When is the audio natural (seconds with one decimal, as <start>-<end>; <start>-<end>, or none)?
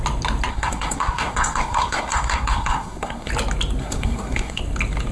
0.0-0.5; 3.3-3.8; 4.6-5.1